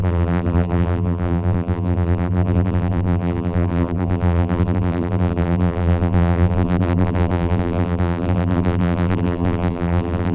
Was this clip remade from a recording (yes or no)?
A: yes